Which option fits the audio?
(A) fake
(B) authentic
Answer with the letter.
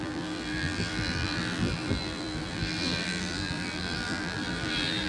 A